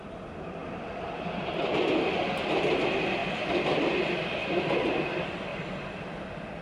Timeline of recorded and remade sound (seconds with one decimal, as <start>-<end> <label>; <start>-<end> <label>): 0.0-3.2 recorded; 3.2-5.0 remade; 5.0-5.5 recorded; 5.5-6.6 remade